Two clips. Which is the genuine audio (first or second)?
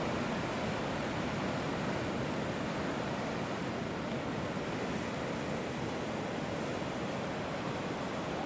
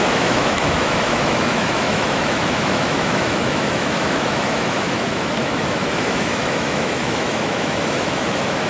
first